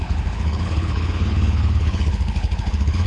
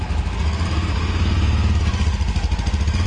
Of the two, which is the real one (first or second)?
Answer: second